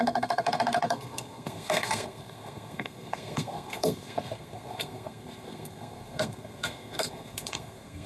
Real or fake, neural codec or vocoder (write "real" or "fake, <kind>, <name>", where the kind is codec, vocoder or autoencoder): fake, codec, SNAC